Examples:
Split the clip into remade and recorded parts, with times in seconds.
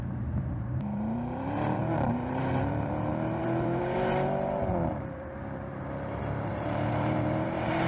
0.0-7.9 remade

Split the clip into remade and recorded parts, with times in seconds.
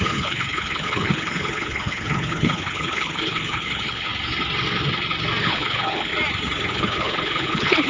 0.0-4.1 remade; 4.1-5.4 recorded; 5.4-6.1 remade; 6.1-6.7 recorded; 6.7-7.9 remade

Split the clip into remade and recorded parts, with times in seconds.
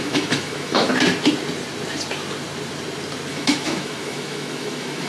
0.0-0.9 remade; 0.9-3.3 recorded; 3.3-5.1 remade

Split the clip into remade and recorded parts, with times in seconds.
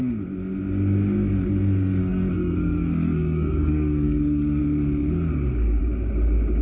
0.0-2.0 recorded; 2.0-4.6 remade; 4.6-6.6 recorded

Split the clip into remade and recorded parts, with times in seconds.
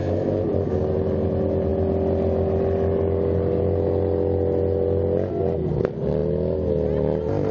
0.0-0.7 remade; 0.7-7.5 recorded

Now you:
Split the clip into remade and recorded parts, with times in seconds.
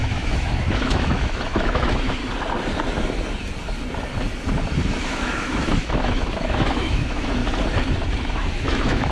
0.0-2.2 remade; 2.2-5.0 recorded; 5.0-7.4 remade; 7.4-8.3 recorded; 8.3-9.1 remade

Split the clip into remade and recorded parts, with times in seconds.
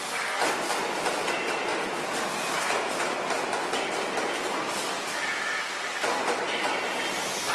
0.0-7.5 recorded